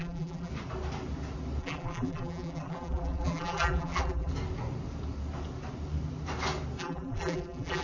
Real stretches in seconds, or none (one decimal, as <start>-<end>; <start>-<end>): 0.5-1.6; 4.3-6.8